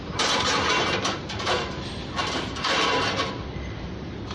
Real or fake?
fake